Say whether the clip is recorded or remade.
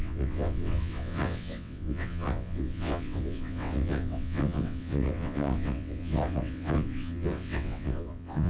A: remade